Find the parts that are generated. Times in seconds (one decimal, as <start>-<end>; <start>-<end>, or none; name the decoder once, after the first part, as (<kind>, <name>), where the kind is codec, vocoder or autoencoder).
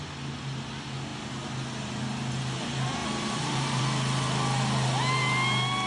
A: 3.0-3.8 (vocoder, BigVGAN v2)